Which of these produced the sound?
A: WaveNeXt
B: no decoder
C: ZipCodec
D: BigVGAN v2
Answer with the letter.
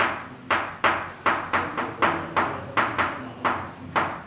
B